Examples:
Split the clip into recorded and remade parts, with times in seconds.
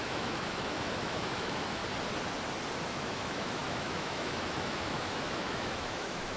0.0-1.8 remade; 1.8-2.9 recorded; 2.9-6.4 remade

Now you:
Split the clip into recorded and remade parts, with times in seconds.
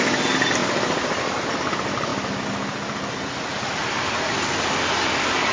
0.0-5.5 recorded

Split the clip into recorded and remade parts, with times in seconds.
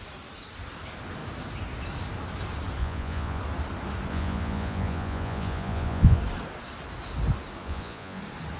0.0-2.8 recorded; 2.8-3.4 remade; 3.4-4.1 recorded; 4.1-6.2 remade; 6.2-7.6 recorded; 7.6-8.2 remade; 8.2-8.6 recorded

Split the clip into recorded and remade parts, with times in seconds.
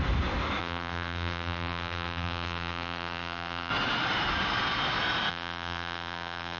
0.0-0.6 recorded; 0.6-3.7 remade; 3.7-5.3 recorded; 5.3-6.6 remade